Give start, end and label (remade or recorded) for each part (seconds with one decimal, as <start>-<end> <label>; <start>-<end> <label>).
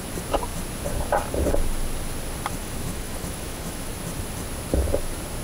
0.0-2.6 recorded; 2.6-3.9 remade; 3.9-5.4 recorded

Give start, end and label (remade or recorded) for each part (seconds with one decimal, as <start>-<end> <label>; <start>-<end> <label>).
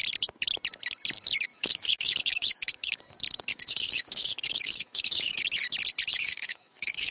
0.0-1.5 recorded; 1.5-3.0 remade; 3.0-3.5 recorded; 3.5-5.4 remade; 5.4-6.1 recorded; 6.1-7.1 remade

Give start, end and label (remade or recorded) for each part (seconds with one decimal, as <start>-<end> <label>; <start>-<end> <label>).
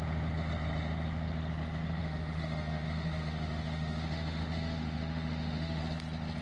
0.0-2.0 recorded; 2.0-5.8 remade; 5.8-6.4 recorded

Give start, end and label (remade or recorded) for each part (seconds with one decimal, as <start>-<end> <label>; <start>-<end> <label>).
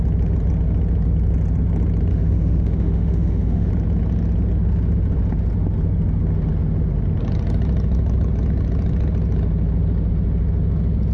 0.0-2.1 recorded; 2.1-3.7 remade; 3.7-11.1 recorded